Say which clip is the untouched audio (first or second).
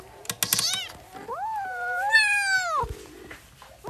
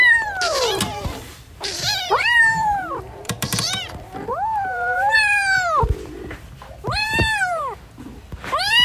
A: first